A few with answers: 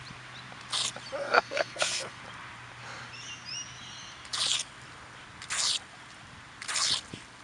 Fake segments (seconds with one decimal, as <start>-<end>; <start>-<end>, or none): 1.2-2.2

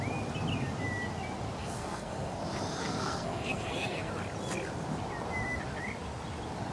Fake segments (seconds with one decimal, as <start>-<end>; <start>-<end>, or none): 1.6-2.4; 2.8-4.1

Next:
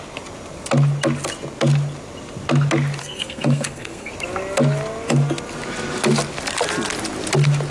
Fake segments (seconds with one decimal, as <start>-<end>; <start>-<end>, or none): 3.0-4.1